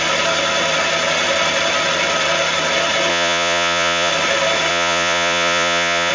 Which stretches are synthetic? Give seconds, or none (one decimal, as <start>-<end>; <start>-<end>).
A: 3.1-4.1; 4.7-6.1